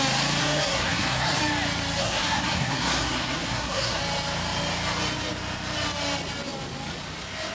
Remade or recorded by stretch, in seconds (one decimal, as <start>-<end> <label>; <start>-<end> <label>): 0.0-0.4 recorded; 0.4-1.4 remade; 1.4-2.0 recorded; 2.0-4.0 remade; 4.0-7.5 recorded